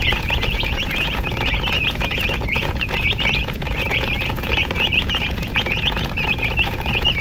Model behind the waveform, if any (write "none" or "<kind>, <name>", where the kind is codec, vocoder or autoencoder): vocoder, Vocos